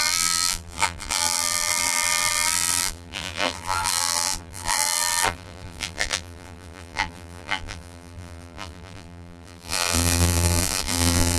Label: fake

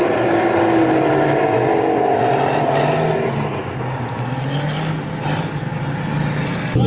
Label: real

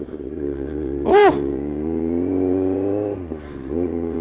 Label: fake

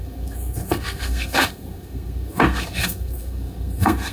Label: fake